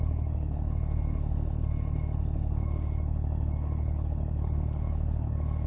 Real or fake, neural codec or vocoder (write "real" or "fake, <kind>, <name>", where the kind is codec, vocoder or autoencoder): fake, codec, HILCodec